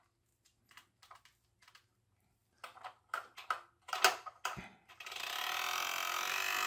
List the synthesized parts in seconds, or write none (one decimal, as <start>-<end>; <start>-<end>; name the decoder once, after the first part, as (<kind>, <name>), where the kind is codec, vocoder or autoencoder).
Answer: none